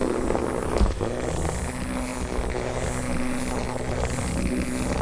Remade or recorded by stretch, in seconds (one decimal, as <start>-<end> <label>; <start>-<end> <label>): 0.0-5.0 recorded